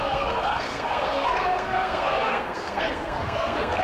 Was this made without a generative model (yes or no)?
no